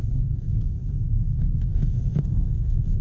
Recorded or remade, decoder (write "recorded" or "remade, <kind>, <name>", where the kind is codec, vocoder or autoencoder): remade, codec, SNAC